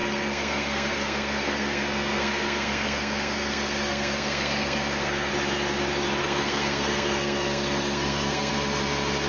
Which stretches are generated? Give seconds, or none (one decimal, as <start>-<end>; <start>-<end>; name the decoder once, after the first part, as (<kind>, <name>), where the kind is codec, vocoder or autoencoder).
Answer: 0.0-5.3 (codec, SNAC); 6.2-8.5